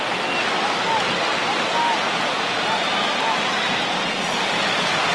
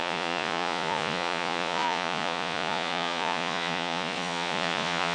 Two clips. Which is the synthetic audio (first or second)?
second